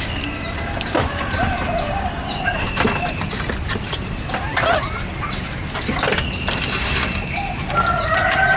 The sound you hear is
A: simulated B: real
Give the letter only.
B